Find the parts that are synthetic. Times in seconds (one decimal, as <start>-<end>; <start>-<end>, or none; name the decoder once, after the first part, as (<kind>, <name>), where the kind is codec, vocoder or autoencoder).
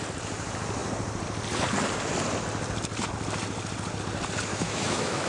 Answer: 4.5-5.3 (autoencoder, DAC-VAE)